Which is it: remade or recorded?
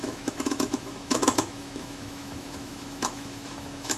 remade